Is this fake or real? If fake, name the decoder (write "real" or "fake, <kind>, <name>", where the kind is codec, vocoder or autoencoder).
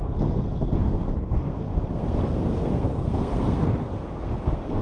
fake, codec, SNAC